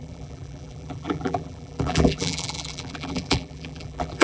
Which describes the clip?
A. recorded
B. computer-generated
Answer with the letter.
B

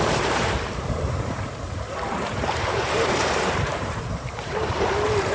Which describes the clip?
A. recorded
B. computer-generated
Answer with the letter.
B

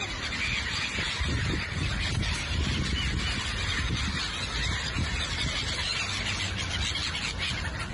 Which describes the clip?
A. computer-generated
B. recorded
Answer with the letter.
B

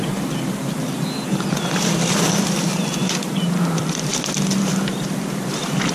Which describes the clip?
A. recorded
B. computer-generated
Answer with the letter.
B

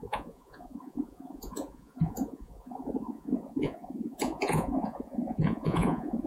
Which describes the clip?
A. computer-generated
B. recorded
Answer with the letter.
A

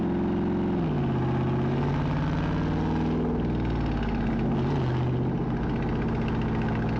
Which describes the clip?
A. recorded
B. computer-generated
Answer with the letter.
A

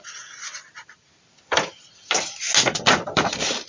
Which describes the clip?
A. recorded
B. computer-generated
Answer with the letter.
A